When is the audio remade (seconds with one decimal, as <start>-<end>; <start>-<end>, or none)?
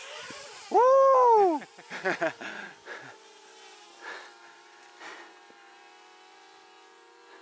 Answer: none